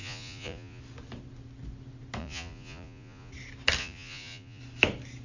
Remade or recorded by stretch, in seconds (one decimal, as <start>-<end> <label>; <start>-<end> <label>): 0.0-0.8 remade; 0.8-2.2 recorded; 2.2-3.3 remade; 3.3-3.8 recorded; 3.8-4.6 remade; 4.6-5.2 recorded